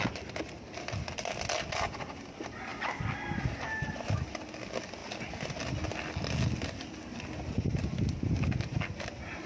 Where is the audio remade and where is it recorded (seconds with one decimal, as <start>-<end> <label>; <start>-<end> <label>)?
0.0-9.5 recorded